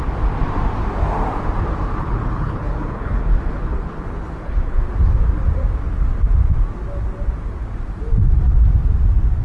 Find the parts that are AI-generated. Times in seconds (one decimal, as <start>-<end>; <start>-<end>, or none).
2.0-4.8